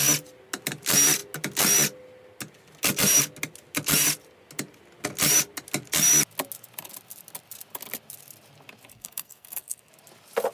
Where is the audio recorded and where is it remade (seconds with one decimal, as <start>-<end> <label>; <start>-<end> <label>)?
0.0-8.9 recorded; 8.9-9.9 remade; 9.9-10.5 recorded